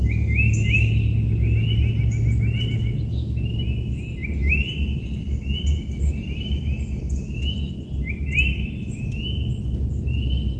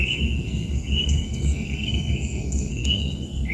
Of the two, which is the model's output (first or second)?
second